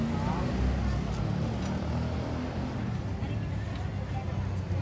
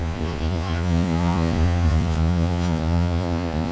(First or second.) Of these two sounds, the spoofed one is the second